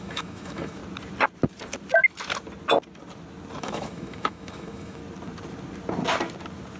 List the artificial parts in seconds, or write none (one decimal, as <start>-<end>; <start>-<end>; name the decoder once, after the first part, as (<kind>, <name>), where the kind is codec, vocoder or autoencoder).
0.0-0.8 (autoencoder, DAC-VAE); 3.6-5.0